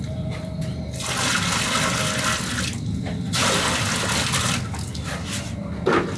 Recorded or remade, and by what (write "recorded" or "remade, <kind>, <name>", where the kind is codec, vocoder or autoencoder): recorded